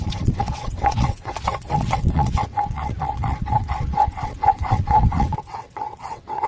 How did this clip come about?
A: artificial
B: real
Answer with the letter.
A